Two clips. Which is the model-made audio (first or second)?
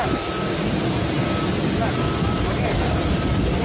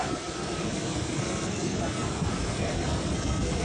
second